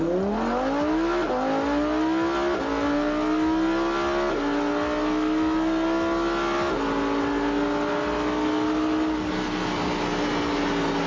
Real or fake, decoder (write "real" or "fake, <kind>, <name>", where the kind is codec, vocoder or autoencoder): real